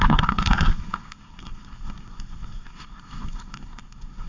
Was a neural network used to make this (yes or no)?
yes